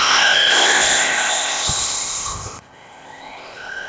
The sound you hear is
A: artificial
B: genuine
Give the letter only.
A